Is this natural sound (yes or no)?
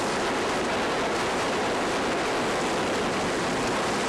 yes